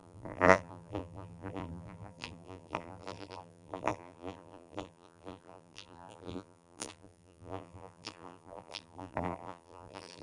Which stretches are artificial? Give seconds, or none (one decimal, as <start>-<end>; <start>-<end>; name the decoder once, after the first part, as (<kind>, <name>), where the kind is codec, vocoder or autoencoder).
0.0-10.2 (vocoder, BigVGAN v2)